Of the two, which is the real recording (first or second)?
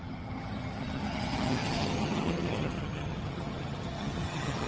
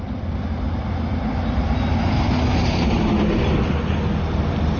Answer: second